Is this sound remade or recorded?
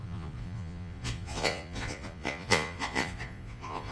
remade